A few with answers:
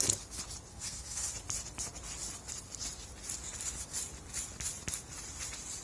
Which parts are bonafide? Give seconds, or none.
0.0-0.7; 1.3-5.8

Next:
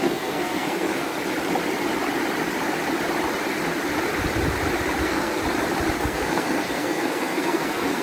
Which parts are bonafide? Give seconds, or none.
1.1-5.0; 5.4-6.0

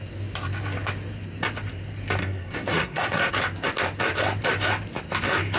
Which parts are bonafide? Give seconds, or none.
0.0-2.2; 3.3-5.6

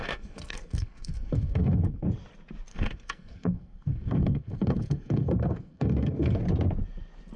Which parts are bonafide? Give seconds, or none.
2.1-2.7; 6.4-7.4